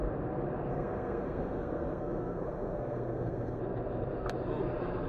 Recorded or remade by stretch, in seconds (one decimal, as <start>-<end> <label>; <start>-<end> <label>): 0.0-0.7 recorded; 0.7-3.6 remade; 3.6-5.1 recorded

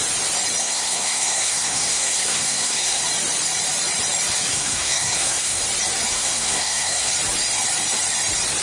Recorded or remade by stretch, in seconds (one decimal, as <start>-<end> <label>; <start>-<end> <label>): 0.0-0.6 recorded; 0.6-3.0 remade; 3.0-4.5 recorded; 4.5-5.6 remade; 5.6-6.1 recorded; 6.1-7.1 remade; 7.1-8.6 recorded